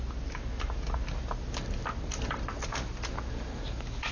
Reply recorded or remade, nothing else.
recorded